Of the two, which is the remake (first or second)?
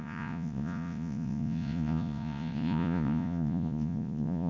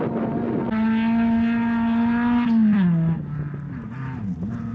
first